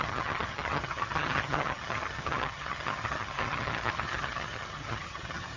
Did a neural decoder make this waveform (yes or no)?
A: yes